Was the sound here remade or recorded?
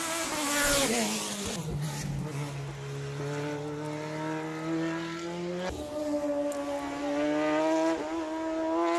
recorded